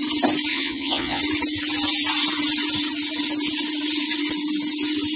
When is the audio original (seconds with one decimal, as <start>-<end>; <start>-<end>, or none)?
0.0-0.5; 1.2-5.2